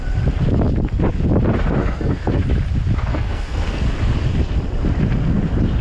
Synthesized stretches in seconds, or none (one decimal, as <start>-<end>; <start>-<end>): 1.8-2.4; 3.1-3.8